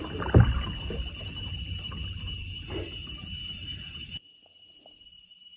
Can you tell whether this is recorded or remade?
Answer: recorded